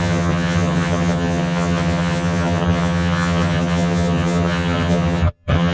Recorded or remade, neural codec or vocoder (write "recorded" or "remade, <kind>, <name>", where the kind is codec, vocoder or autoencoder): remade, vocoder, HiFi-GAN